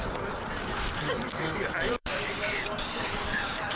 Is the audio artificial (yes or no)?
yes